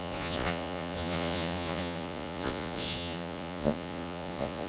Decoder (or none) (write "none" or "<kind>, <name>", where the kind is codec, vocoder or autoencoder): vocoder, Vocos